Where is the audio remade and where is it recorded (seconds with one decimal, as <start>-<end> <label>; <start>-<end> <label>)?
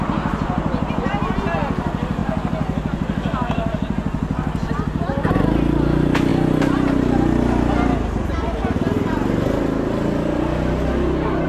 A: 0.0-11.5 recorded